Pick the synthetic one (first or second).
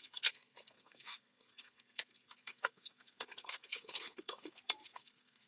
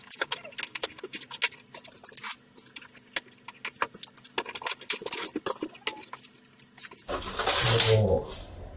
first